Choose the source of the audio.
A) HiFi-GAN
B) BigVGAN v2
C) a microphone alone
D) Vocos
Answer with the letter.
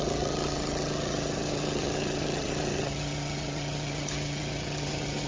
A